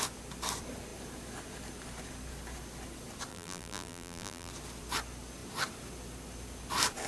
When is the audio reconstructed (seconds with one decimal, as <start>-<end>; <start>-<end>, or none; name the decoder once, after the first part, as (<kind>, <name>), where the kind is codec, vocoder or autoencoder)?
3.3-4.5 (vocoder, BigVGAN v2)